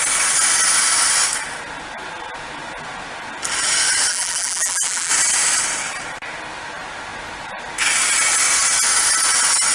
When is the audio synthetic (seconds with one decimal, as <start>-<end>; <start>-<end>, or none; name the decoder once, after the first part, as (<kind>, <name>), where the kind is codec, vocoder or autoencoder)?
4.1-5.1 (vocoder, BigVGAN v2)